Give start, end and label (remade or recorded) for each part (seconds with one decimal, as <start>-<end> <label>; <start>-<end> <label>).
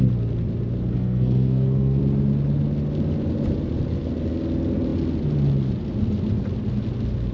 0.0-0.9 recorded; 0.9-2.0 remade; 2.0-7.3 recorded